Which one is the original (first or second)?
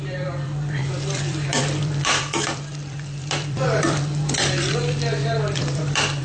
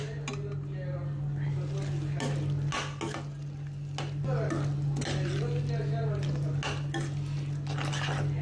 second